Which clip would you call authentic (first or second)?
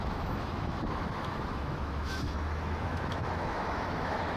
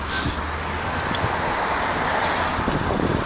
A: second